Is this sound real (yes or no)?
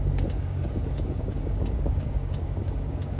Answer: no